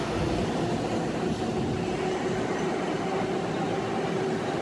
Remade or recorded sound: recorded